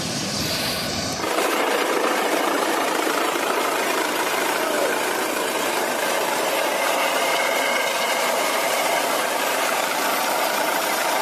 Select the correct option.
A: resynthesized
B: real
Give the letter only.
A